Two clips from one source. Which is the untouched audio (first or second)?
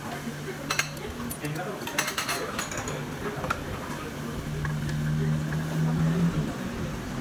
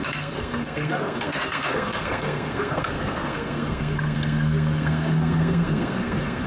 first